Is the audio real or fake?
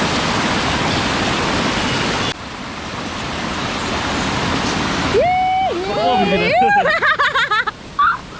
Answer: real